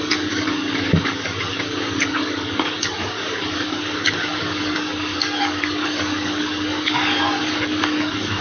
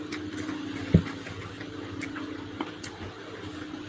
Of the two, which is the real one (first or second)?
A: second